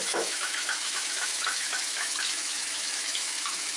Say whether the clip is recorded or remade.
remade